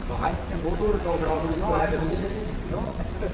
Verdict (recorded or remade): remade